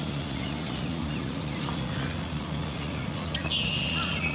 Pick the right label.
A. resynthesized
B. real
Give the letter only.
A